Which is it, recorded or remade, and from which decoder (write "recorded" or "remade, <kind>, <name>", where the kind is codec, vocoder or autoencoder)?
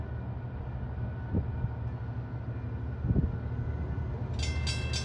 recorded